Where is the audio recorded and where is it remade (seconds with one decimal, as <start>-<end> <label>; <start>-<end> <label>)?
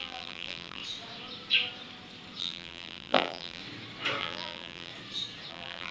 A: 0.0-0.8 remade; 0.8-2.4 recorded; 2.4-3.6 remade; 3.6-4.2 recorded; 4.2-4.9 remade; 4.9-5.5 recorded; 5.5-5.9 remade